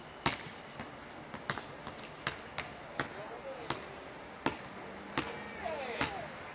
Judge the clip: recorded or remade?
recorded